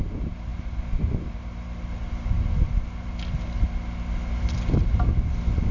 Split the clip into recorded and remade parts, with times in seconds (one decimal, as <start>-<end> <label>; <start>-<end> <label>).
0.0-5.7 recorded